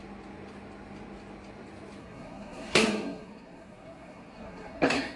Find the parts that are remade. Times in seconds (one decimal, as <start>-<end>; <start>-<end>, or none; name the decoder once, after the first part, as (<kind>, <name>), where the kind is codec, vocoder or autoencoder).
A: 2.0-5.2 (codec, SNAC)